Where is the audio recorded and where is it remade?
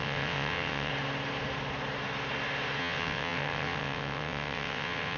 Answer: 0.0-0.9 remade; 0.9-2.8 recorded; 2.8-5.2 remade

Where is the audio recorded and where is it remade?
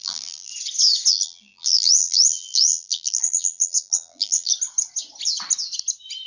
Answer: 0.0-0.5 remade; 0.5-1.1 recorded; 1.1-4.5 remade; 4.5-6.3 recorded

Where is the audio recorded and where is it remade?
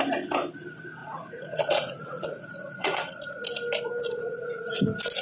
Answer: 0.0-1.0 recorded; 1.0-3.2 remade; 3.2-5.2 recorded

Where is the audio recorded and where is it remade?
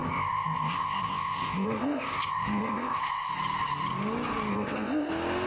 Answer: 0.0-3.3 remade; 3.3-4.5 recorded; 4.5-5.1 remade; 5.1-5.5 recorded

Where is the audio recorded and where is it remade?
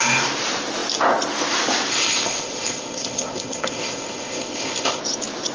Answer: 0.0-1.9 recorded; 1.9-5.0 remade; 5.0-5.5 recorded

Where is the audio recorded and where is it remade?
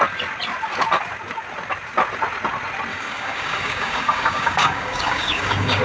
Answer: 0.0-2.9 recorded; 2.9-5.8 remade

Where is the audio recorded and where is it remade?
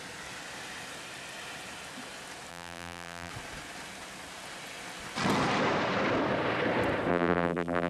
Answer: 0.0-2.5 recorded; 2.5-3.3 remade; 3.3-7.1 recorded; 7.1-7.9 remade